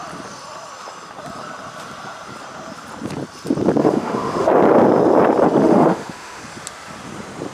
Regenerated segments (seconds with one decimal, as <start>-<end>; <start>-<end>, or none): 3.8-4.5; 5.6-6.4